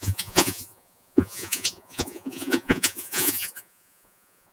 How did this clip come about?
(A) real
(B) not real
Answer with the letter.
B